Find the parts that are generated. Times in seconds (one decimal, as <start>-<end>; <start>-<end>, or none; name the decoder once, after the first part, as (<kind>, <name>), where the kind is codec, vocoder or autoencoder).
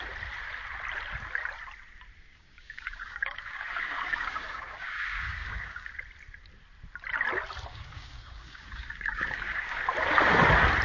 2.3-5.9 (codec, DAC); 7.7-9.8